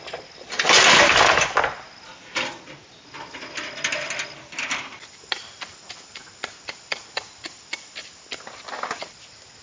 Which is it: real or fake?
real